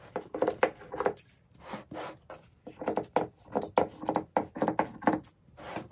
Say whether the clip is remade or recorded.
recorded